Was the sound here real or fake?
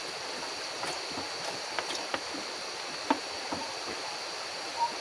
real